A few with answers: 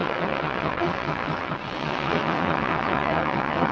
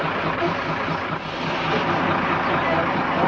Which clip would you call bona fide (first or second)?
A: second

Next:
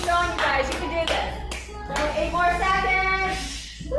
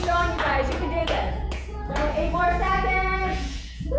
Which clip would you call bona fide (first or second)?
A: first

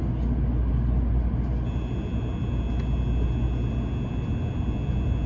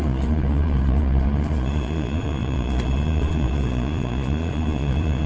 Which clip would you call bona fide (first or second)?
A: first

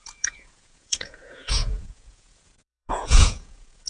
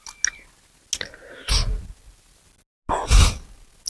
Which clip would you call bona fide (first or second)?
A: second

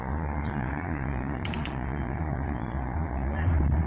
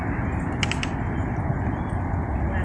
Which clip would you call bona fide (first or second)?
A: second